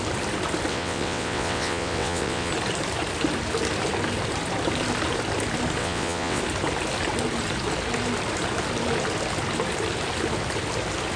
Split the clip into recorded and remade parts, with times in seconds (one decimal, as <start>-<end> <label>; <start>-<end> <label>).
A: 0.0-0.7 recorded; 0.7-2.5 remade; 2.5-5.8 recorded; 5.8-6.4 remade; 6.4-11.2 recorded